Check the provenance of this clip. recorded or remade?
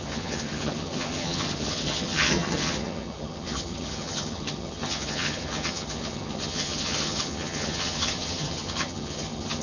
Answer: remade